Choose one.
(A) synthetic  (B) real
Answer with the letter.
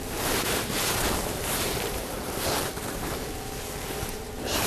A